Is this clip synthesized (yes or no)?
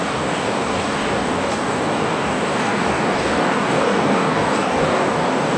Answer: yes